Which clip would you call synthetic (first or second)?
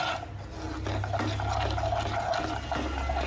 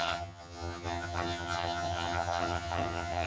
second